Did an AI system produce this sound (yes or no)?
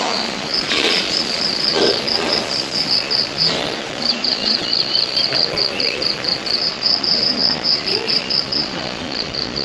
yes